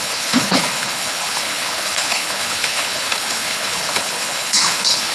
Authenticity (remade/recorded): remade